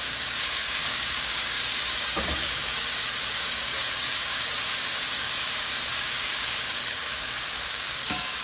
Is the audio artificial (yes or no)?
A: yes